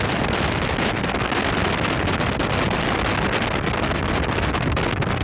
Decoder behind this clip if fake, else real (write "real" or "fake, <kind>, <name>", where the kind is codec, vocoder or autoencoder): real